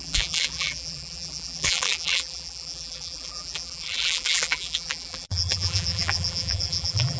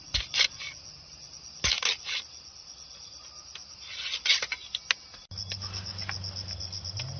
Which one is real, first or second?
second